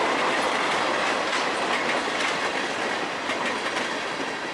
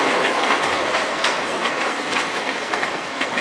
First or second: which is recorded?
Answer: first